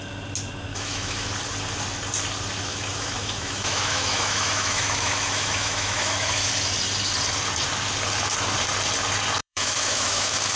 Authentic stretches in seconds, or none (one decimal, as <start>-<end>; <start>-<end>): 0.0-0.7; 1.3-2.7; 6.5-9.4